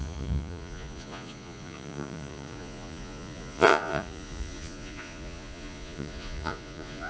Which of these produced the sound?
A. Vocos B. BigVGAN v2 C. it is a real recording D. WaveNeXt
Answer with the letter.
A